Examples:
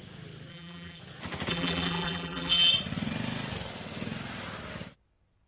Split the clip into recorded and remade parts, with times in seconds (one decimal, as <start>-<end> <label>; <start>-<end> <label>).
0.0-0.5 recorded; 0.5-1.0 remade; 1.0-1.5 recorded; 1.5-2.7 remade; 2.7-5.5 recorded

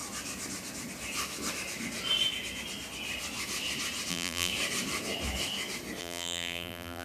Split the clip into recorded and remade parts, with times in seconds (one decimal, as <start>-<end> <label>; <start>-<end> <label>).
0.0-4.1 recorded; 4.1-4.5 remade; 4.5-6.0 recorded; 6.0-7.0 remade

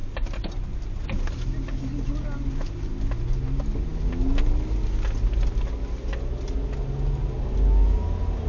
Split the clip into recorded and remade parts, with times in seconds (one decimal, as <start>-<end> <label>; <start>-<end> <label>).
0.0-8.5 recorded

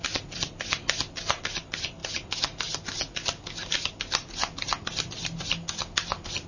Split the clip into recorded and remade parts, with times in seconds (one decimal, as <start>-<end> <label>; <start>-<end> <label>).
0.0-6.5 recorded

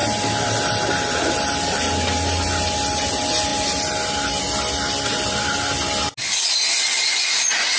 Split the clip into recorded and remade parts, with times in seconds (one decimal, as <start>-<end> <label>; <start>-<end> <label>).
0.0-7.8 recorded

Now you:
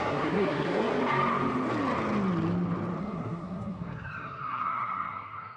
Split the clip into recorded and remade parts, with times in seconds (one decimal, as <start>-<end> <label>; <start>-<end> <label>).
0.0-0.9 remade; 0.9-3.0 recorded; 3.0-5.6 remade